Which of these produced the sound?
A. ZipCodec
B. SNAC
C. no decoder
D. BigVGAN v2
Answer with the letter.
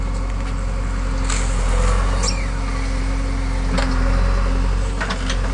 C